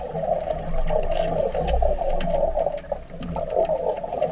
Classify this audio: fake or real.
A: real